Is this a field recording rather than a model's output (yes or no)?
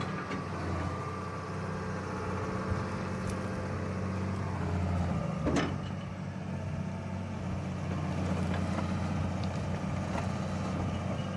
yes